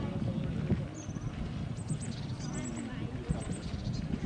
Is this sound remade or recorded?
recorded